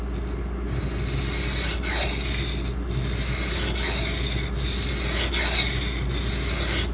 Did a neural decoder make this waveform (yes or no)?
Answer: no